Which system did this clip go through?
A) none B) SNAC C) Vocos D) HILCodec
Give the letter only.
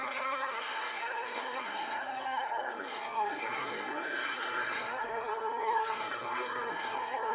B